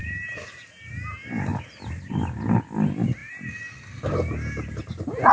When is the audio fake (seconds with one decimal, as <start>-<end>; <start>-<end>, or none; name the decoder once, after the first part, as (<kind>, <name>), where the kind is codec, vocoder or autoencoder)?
none